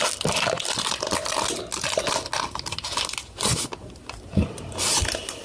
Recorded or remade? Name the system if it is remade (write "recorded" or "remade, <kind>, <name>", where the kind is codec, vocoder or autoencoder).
recorded